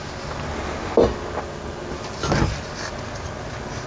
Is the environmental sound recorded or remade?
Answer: recorded